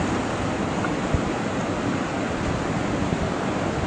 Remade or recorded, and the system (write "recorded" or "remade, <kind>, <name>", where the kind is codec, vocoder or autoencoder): recorded